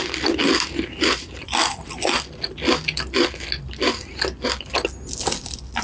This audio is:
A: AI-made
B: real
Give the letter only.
B